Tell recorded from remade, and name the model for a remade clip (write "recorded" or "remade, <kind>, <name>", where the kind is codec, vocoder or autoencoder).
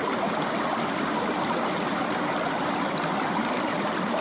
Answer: recorded